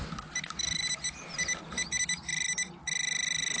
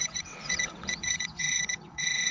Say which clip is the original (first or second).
first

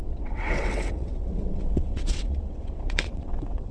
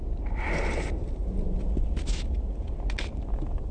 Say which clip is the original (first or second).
second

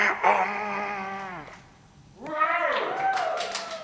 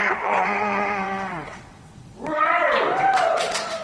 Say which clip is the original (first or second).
first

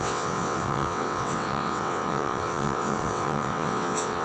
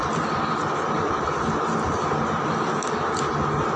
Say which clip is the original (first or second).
second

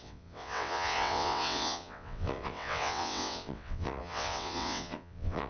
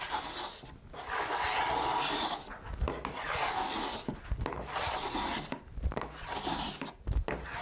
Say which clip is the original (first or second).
second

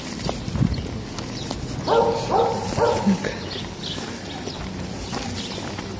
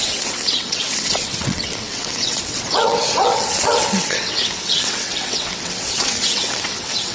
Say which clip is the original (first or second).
first